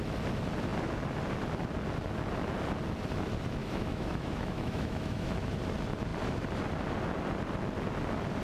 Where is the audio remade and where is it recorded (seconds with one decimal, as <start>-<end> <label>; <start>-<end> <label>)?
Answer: 0.0-3.6 recorded; 3.6-5.5 remade; 5.5-8.4 recorded